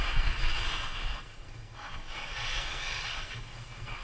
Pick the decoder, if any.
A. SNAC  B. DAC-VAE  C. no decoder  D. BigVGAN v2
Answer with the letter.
A